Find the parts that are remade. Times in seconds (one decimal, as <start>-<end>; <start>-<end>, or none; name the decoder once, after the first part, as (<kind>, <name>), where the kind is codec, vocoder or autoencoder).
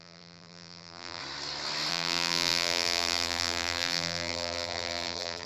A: 0.0-1.2 (vocoder, BigVGAN v2); 1.9-5.5